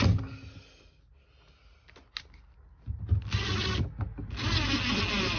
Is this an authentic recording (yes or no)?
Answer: yes